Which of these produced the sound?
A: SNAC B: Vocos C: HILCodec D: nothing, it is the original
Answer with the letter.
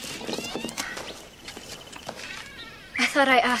D